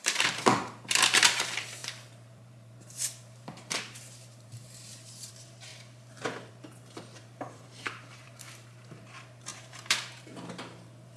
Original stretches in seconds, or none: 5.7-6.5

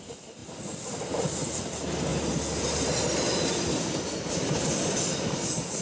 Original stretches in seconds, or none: 0.0-5.8

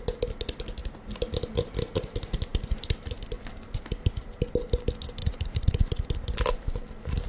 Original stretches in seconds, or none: 0.0-5.2; 5.7-7.3

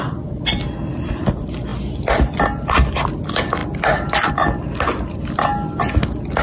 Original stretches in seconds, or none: 0.0-6.4

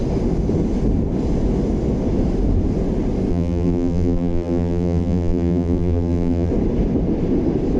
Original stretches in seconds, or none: 0.0-3.3; 6.5-7.8

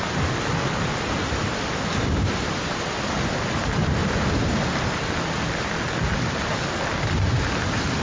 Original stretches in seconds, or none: 0.0-2.0; 2.8-4.0; 4.9-8.0

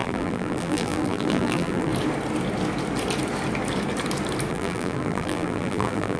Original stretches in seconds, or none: 1.9-4.5

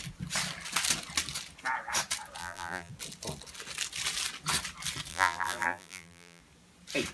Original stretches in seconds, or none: 0.0-2.4; 2.9-5.1; 6.4-7.1